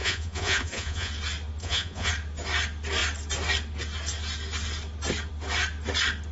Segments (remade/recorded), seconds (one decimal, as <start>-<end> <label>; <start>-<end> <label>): 0.0-1.1 remade; 1.1-1.6 recorded; 1.6-2.1 remade; 2.1-6.3 recorded